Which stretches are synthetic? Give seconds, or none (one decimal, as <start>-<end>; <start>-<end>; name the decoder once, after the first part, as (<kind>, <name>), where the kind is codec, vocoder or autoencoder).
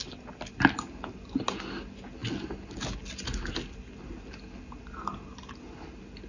none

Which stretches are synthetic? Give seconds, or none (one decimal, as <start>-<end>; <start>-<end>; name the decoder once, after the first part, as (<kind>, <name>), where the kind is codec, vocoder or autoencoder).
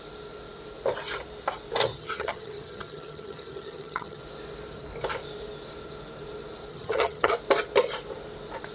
1.9-4.2 (vocoder, HiFi-GAN); 6.7-7.3